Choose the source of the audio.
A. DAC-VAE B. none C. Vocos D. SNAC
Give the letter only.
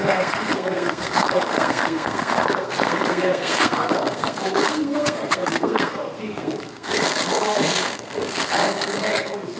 D